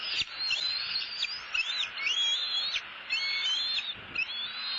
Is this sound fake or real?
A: real